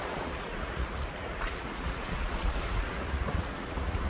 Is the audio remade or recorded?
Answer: remade